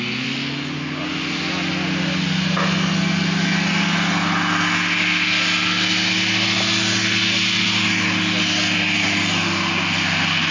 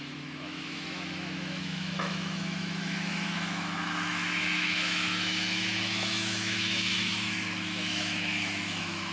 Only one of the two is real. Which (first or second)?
first